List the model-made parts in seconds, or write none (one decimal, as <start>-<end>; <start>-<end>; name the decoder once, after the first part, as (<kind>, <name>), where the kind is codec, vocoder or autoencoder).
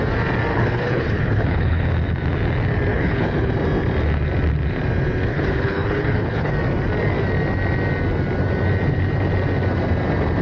0.5-1.9 (codec, HILCodec); 2.9-3.5; 5.3-6.5